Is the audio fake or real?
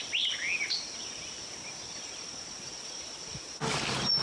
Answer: real